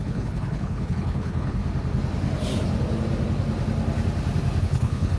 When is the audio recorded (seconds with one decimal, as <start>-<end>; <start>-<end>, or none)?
1.6-4.6